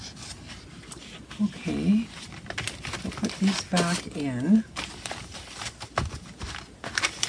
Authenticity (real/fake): real